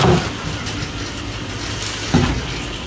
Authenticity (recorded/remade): recorded